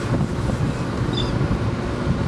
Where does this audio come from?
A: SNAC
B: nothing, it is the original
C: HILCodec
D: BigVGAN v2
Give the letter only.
B